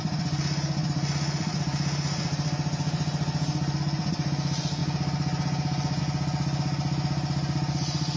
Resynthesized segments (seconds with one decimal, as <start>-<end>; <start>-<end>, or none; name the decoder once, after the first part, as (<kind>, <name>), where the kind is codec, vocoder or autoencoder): none